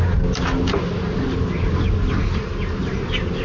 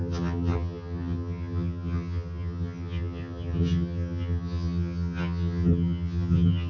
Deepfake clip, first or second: second